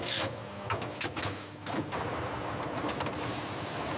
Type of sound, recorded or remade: recorded